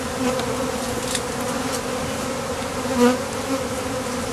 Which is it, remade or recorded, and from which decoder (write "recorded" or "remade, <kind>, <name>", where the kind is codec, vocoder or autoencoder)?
recorded